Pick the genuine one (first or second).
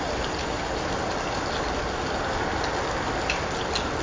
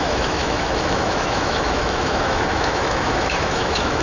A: first